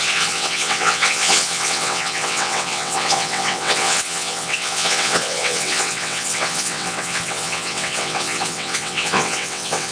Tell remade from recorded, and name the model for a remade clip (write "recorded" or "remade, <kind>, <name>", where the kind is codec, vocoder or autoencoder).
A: remade, vocoder, WaveNeXt